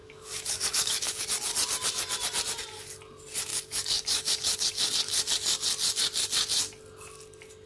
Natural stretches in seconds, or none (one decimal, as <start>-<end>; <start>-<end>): 1.2-3.5; 4.9-7.7